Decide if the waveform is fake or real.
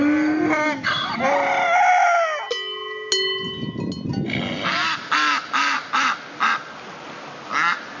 real